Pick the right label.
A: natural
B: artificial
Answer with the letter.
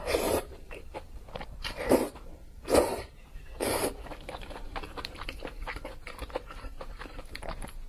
B